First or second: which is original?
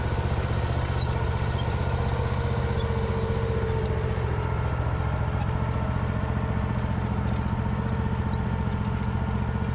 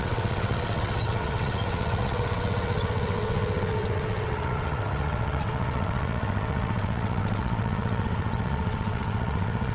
first